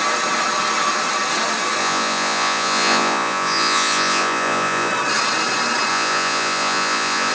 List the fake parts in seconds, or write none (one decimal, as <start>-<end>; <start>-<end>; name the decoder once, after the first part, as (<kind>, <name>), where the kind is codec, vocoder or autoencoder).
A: 1.8-4.9 (vocoder, Vocos); 5.9-7.3